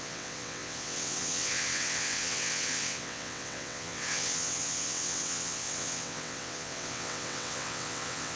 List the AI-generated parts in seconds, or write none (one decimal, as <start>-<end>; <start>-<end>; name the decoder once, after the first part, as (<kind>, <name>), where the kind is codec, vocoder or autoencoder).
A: 0.0-8.4 (vocoder, WaveNeXt)